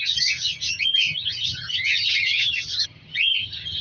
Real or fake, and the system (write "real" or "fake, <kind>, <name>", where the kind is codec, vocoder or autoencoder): fake, vocoder, HiFi-GAN